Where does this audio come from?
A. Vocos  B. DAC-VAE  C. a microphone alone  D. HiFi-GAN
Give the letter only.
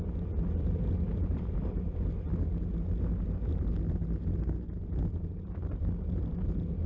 C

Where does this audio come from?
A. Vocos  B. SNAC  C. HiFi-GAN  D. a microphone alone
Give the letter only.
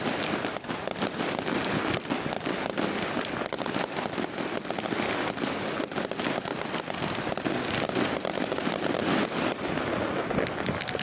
D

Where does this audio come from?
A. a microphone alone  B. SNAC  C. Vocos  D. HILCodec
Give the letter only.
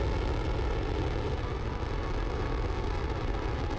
A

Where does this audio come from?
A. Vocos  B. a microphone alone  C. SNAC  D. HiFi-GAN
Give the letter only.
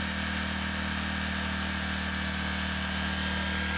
B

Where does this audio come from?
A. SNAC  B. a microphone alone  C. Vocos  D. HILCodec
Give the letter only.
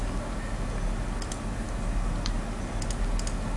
B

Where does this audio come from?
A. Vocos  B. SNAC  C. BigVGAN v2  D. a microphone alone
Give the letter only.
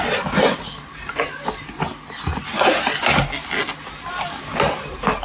D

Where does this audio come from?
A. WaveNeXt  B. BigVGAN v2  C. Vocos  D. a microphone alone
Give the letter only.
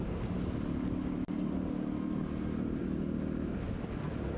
D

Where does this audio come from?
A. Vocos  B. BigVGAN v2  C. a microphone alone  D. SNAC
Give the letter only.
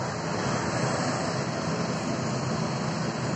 C